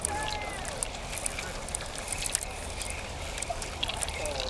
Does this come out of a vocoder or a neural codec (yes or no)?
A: no